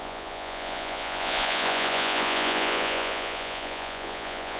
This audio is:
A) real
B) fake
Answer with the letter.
B